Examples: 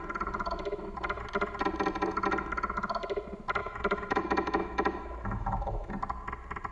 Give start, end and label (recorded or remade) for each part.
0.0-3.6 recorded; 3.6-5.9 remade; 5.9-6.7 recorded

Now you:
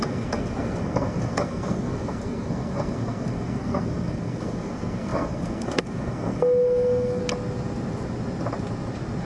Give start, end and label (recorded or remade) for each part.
0.0-7.2 remade; 7.2-9.2 recorded

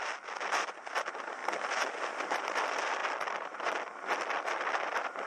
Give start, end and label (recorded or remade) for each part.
0.0-5.3 recorded

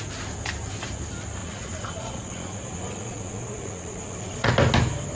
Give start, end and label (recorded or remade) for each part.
0.0-1.4 recorded; 1.4-4.5 remade; 4.5-5.1 recorded

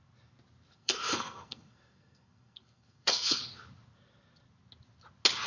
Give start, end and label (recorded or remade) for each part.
0.0-0.7 recorded; 0.7-3.4 remade; 3.4-5.5 recorded

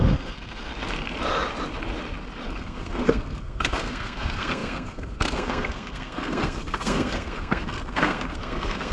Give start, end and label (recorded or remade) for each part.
0.0-0.7 remade; 0.7-2.5 recorded; 2.5-8.9 remade

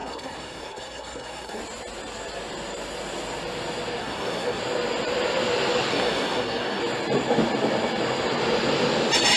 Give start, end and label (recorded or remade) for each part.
0.0-1.6 remade; 1.6-4.0 recorded; 4.0-4.6 remade; 4.6-5.9 recorded; 5.9-6.8 remade; 6.8-9.4 recorded

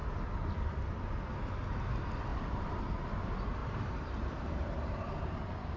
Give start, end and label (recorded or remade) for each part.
0.0-2.3 recorded; 2.3-2.9 remade; 2.9-3.6 recorded; 3.6-5.8 remade